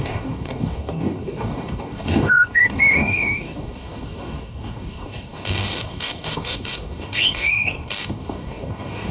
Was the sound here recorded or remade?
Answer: remade